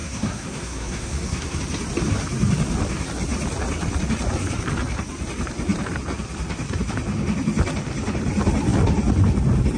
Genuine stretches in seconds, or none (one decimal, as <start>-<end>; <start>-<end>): 1.6-9.8